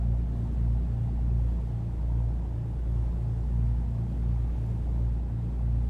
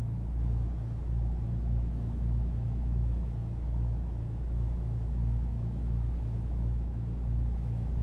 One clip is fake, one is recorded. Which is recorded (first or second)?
first